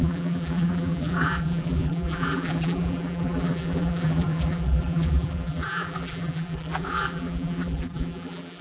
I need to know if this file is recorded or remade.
remade